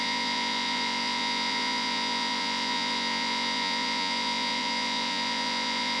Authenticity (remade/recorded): remade